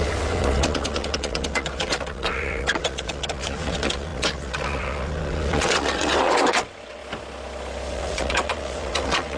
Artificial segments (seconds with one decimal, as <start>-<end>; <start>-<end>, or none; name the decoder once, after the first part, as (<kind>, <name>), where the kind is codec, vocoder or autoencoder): 0.0-7.0 (vocoder, WaveNeXt); 7.9-9.4